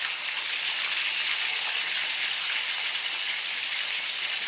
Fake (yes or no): no